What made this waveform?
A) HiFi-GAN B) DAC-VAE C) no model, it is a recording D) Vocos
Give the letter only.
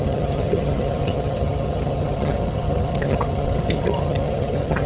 A